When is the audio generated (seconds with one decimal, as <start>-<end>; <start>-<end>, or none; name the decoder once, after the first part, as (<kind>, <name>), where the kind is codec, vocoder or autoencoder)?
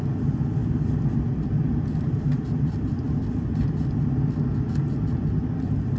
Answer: 0.6-4.1 (vocoder, BigVGAN v2); 5.4-6.0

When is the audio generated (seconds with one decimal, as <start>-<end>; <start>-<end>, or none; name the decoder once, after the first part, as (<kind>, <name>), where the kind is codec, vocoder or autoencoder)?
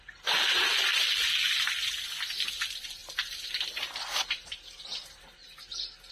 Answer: none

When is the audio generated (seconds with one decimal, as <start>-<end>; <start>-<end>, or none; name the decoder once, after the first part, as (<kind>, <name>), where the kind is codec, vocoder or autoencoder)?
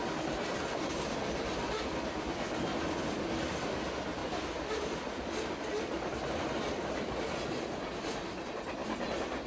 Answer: none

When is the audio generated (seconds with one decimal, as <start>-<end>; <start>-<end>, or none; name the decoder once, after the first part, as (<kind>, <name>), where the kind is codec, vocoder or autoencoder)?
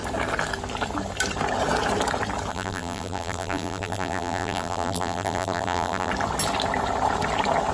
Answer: 2.5-6.1 (vocoder, BigVGAN v2)